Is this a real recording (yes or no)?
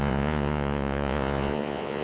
no